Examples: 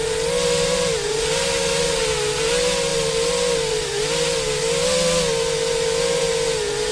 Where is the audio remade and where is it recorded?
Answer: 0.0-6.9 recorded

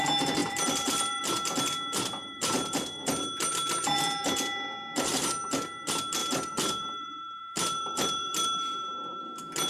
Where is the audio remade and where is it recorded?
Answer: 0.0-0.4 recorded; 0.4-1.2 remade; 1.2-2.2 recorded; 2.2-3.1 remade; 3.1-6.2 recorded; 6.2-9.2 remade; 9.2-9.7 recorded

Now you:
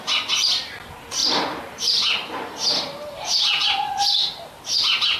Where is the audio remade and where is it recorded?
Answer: 0.0-5.2 recorded